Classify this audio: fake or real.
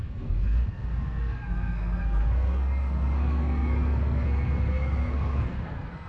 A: fake